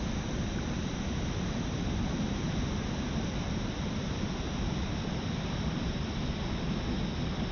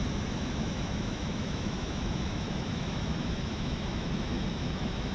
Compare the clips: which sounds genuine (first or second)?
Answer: first